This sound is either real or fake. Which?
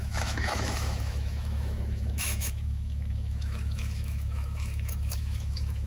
fake